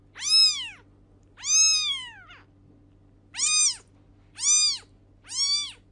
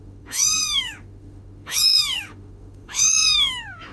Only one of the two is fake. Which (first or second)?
second